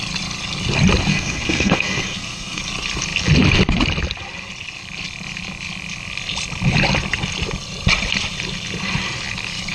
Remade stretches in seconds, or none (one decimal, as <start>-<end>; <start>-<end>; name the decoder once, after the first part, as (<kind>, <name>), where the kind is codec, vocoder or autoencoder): 1.1-2.6 (codec, SNAC)